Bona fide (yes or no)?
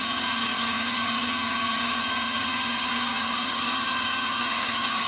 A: no